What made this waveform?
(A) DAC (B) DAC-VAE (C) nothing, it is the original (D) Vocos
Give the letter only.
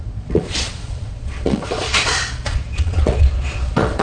D